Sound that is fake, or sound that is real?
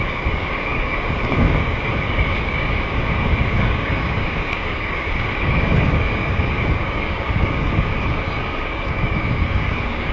fake